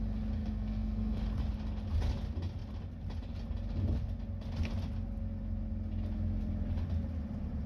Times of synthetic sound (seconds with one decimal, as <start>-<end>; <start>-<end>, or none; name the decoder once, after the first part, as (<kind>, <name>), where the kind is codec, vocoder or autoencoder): 0.4-1.2 (codec, SNAC)